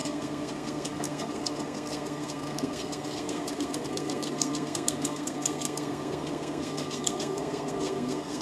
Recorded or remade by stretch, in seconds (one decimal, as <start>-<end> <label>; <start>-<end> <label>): 0.0-8.4 remade